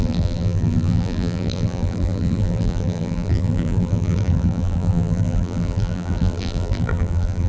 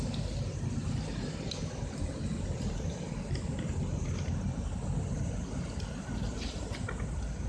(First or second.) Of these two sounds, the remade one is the first